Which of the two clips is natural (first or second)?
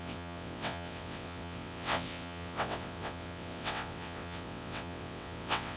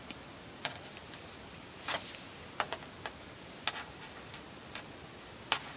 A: second